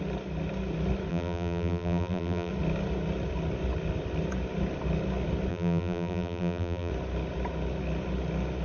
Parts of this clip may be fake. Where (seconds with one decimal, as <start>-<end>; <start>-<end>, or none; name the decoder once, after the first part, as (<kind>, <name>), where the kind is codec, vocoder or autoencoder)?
1.1-2.5 (vocoder, BigVGAN v2); 5.5-6.9